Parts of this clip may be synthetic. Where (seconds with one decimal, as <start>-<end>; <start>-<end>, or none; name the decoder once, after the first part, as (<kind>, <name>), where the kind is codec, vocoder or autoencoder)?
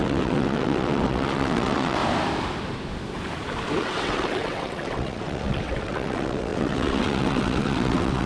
0.0-2.0 (vocoder, WaveNeXt); 3.8-8.3